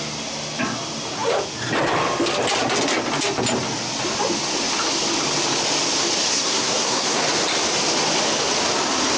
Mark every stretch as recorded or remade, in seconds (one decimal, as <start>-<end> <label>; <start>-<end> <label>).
0.0-6.3 recorded; 6.3-7.2 remade; 7.2-9.2 recorded